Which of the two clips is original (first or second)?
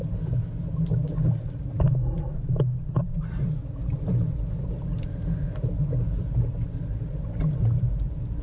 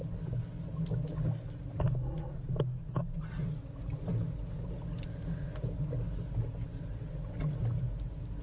second